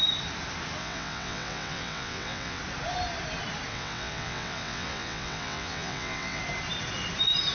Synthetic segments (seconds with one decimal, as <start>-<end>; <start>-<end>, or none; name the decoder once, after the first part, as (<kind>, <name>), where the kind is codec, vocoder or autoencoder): 0.8-2.6 (vocoder, WaveNeXt); 3.7-6.4